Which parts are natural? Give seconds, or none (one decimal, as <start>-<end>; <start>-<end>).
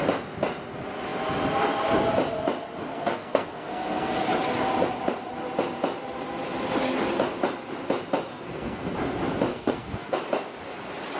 0.0-2.9; 4.1-8.3; 8.9-9.5; 10.2-11.2